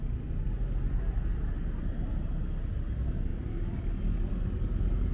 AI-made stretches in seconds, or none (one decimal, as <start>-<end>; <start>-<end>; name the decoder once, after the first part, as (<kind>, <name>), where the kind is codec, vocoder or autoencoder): none